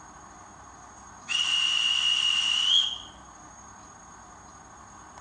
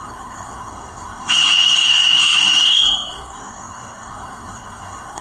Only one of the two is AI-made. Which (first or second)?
second